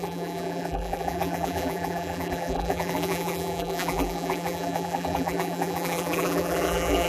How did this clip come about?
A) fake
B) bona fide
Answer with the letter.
A